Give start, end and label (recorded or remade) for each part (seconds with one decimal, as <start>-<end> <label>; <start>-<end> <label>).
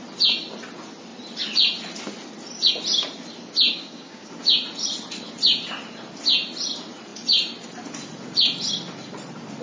0.0-3.7 recorded; 3.7-4.3 remade; 4.3-9.6 recorded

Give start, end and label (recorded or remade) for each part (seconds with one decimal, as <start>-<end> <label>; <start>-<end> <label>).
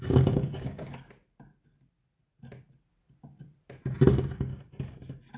0.0-0.9 remade; 0.9-4.1 recorded; 4.1-4.5 remade; 4.5-5.4 recorded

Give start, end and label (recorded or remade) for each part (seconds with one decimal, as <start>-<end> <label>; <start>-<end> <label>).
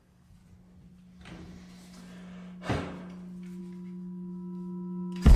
0.0-0.4 remade; 0.4-3.6 recorded; 3.6-5.4 remade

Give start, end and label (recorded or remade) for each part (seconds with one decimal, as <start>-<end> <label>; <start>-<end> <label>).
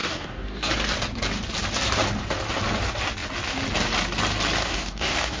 0.0-0.7 remade; 0.7-4.6 recorded; 4.6-5.4 remade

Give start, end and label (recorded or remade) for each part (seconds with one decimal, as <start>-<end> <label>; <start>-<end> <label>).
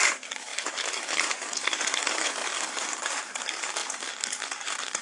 0.0-5.0 remade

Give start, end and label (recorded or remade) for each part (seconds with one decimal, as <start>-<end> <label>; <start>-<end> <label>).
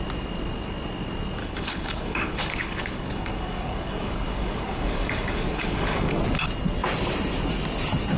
0.0-1.4 recorded; 1.4-6.2 remade; 6.2-8.2 recorded